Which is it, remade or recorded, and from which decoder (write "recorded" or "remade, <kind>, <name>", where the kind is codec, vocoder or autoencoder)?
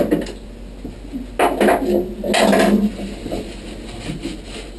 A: recorded